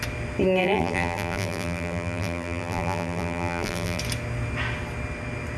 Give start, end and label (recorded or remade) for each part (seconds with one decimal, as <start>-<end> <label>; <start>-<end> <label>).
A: 0.0-0.6 recorded; 0.6-4.0 remade; 4.0-5.6 recorded